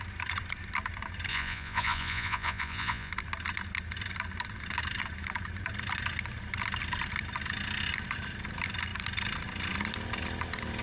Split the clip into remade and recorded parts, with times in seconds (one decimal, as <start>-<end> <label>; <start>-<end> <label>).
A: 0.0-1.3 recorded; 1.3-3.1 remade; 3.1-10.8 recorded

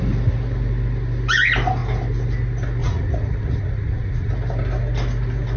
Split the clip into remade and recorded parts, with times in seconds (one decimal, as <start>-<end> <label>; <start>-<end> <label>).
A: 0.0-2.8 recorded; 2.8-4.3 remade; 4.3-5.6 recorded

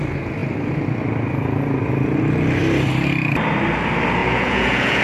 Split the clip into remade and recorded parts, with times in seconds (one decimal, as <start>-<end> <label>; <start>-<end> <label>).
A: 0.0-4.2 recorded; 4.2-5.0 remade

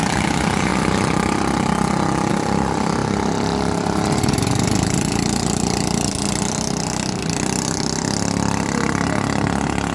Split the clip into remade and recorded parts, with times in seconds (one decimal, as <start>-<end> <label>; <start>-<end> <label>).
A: 0.0-9.9 recorded

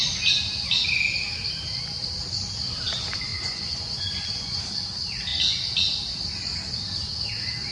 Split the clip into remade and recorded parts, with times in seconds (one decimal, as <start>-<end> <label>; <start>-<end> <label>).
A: 0.0-3.3 recorded; 3.3-4.6 remade; 4.6-7.7 recorded